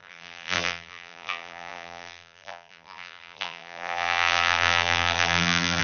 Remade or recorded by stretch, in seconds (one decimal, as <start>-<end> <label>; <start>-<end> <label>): 0.0-5.8 remade